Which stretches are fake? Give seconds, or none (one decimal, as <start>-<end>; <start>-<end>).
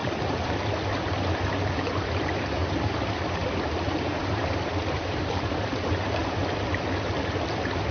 1.0-3.4; 3.9-6.2